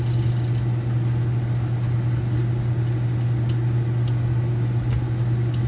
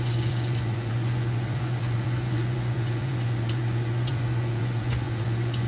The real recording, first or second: first